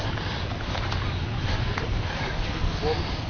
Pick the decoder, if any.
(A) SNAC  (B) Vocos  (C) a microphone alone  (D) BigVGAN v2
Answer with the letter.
C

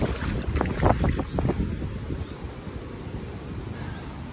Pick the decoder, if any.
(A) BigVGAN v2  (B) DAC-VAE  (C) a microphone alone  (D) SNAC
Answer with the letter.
C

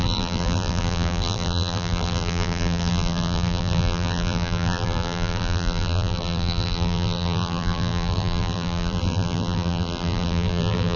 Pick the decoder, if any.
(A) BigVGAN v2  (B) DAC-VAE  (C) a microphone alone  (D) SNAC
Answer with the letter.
A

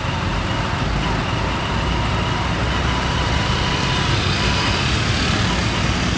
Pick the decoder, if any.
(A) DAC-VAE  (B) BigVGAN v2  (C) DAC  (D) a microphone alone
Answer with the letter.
D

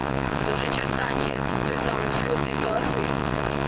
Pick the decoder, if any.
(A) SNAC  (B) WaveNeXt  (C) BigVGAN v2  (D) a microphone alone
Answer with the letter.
B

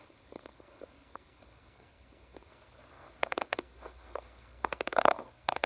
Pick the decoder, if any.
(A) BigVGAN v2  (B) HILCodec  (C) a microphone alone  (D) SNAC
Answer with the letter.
D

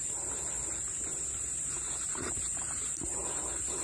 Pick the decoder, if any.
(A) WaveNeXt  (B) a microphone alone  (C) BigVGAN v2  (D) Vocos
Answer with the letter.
C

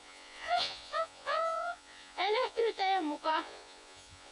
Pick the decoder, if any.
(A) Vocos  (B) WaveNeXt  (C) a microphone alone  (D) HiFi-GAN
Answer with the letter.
A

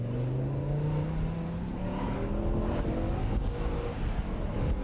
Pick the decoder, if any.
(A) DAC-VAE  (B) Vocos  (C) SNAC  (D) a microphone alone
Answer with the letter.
D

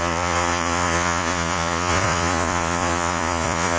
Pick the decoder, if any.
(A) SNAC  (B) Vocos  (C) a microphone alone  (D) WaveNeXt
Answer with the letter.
B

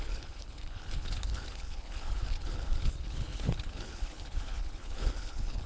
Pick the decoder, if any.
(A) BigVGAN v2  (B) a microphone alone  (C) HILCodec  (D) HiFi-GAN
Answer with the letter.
C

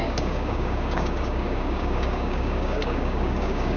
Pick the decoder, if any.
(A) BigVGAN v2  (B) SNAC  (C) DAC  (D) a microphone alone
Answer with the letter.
C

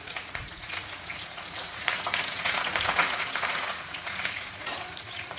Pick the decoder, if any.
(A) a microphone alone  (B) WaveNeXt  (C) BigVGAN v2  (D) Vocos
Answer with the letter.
D